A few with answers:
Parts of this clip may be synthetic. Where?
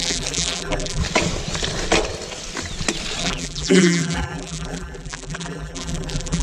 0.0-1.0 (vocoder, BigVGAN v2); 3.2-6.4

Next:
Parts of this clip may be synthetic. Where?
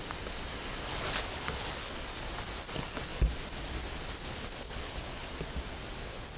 0.9-1.9 (codec, HILCodec); 4.6-5.3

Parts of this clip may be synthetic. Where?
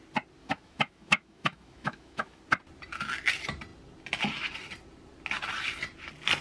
0.4-2.4 (autoencoder, DAC-VAE)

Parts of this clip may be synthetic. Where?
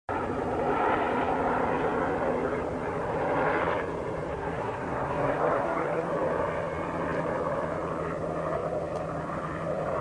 4.3-6.1 (codec, SNAC)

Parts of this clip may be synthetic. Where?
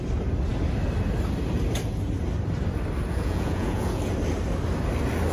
3.1-4.0 (vocoder, Vocos)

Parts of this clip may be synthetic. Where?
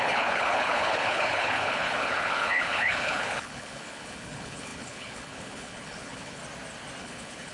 0.0-6.4 (codec, HILCodec); 7.0-7.5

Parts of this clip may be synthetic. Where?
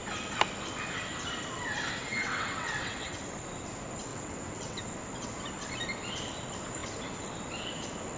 2.0-3.2 (vocoder, WaveNeXt); 4.1-4.8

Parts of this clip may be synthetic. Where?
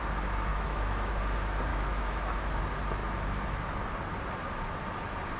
0.5-1.2 (autoencoder, DAC-VAE); 1.7-2.6